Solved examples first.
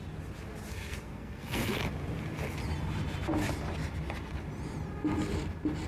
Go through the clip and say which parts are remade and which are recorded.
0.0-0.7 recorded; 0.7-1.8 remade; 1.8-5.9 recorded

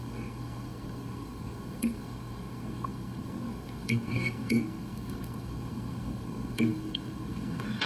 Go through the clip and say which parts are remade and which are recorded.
0.0-7.9 remade

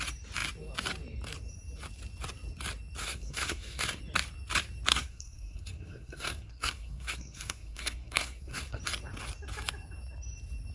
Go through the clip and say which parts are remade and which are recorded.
0.0-3.0 recorded; 3.0-4.0 remade; 4.0-4.9 recorded; 4.9-8.8 remade; 8.8-10.7 recorded

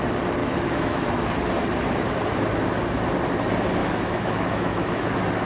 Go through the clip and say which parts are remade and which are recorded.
0.0-0.4 recorded; 0.4-1.2 remade; 1.2-3.8 recorded; 3.8-5.1 remade; 5.1-5.5 recorded

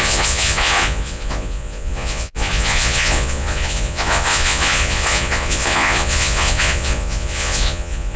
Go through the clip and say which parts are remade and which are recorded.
0.0-8.2 remade

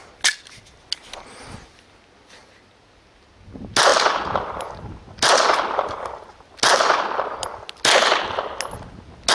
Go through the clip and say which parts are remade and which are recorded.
0.0-9.3 recorded

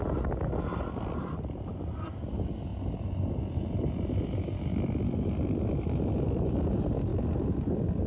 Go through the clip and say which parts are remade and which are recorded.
0.0-8.1 recorded

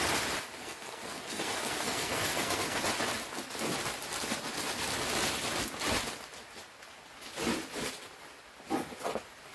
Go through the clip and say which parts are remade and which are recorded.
0.0-0.6 recorded; 0.6-2.8 remade; 2.8-9.5 recorded